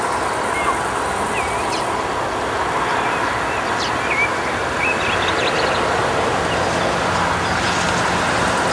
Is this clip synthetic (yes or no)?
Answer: no